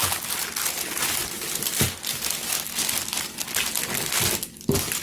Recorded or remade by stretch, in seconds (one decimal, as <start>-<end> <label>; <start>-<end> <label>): 0.0-5.0 recorded